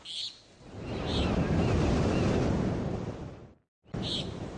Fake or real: real